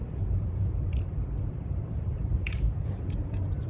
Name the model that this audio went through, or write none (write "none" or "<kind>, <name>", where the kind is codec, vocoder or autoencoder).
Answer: vocoder, BigVGAN v2